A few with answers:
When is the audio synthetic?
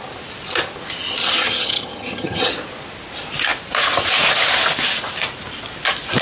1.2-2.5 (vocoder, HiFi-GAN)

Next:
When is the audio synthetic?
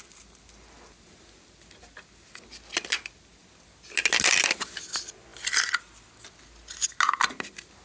none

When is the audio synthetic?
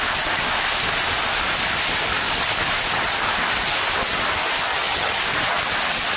4.7-5.2 (vocoder, HiFi-GAN)